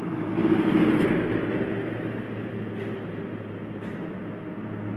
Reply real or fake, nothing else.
real